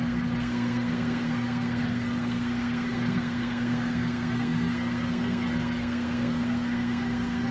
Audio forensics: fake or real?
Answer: fake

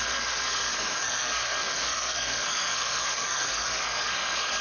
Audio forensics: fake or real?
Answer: fake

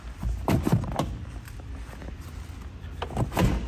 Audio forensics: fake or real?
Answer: real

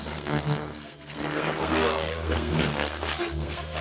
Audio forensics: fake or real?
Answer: fake